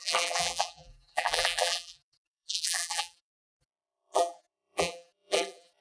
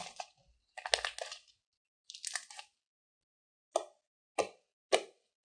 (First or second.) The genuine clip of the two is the second